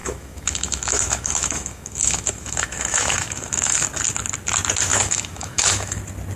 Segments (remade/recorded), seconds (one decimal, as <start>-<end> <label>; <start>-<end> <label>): 0.0-3.8 remade; 3.8-4.9 recorded; 4.9-6.0 remade; 6.0-6.4 recorded